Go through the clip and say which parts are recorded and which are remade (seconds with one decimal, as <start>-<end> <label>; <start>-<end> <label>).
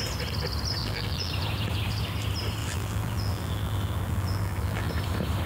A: 0.0-0.8 recorded; 0.8-1.3 remade; 1.3-2.6 recorded; 2.6-4.9 remade; 4.9-5.5 recorded